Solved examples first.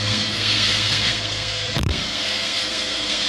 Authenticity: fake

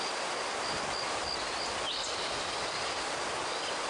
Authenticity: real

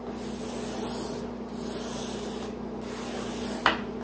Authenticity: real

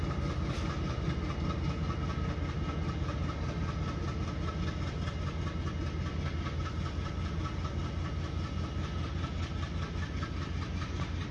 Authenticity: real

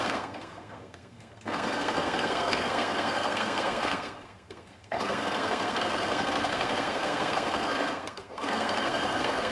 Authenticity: fake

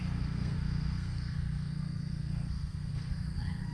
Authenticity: fake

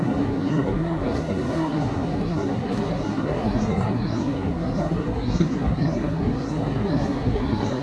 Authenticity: fake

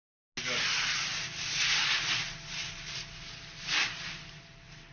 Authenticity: real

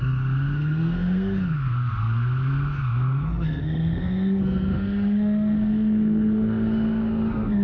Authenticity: fake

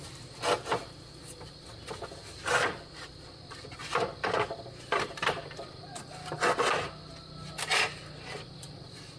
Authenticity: real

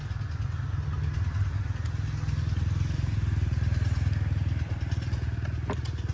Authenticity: real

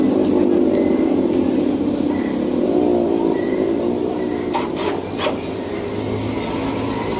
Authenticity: real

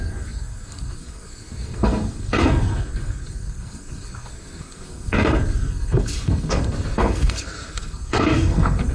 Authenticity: fake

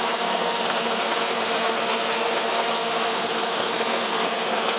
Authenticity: fake